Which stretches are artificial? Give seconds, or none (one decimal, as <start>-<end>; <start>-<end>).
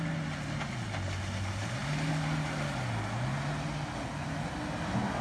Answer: none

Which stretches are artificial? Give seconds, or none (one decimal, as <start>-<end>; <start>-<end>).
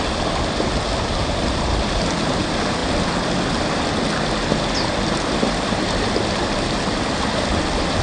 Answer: none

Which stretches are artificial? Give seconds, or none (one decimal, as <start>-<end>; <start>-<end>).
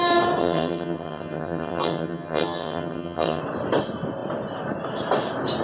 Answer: 0.4-3.4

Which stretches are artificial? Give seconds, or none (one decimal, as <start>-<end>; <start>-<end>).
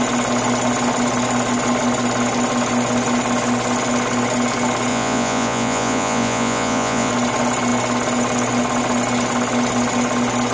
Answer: 4.9-7.1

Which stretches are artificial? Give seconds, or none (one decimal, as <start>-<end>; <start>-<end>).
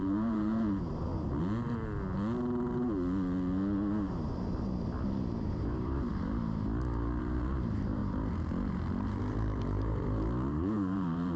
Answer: 0.0-1.1; 5.5-6.1; 7.2-8.0; 9.2-11.4